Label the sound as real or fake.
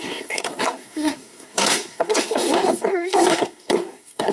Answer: fake